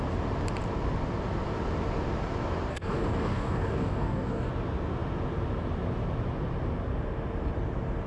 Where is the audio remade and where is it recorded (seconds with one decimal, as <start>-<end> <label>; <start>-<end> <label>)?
0.0-2.7 recorded; 2.7-4.5 remade; 4.5-8.1 recorded